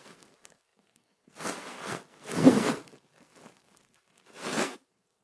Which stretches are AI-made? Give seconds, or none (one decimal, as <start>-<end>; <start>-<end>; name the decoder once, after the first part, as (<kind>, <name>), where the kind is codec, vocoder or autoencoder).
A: 0.0-5.2 (codec, SNAC)